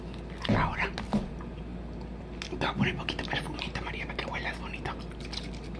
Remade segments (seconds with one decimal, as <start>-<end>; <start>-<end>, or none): none